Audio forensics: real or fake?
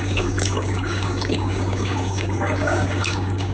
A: fake